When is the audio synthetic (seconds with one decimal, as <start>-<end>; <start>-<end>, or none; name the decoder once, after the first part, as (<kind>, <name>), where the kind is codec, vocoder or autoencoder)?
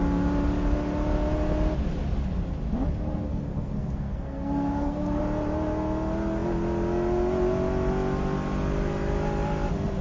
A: 3.3-5.2 (codec, SNAC)